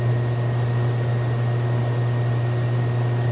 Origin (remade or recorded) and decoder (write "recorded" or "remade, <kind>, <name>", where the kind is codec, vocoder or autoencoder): recorded